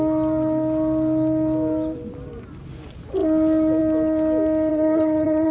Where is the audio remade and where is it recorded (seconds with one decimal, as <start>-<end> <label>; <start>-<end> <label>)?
0.0-4.7 recorded; 4.7-5.5 remade